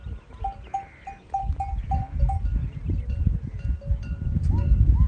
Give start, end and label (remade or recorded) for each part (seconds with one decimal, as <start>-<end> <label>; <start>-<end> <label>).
0.0-4.4 recorded; 4.4-5.1 remade